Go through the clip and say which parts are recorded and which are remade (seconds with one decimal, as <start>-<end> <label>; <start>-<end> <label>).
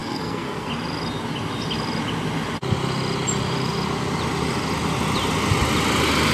0.0-0.7 remade; 0.7-6.3 recorded